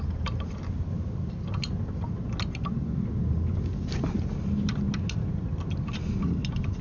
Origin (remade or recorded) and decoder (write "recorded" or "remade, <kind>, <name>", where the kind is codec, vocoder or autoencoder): recorded